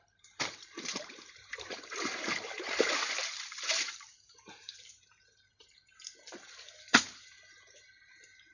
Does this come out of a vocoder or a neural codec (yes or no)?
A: yes